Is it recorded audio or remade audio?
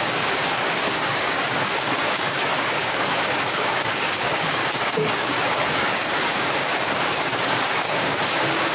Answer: remade